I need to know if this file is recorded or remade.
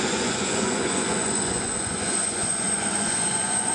remade